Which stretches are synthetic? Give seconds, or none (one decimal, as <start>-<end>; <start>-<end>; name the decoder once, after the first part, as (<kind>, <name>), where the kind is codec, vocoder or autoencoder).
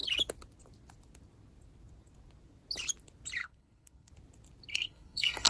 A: 3.4-4.1 (codec, SNAC); 4.7-5.5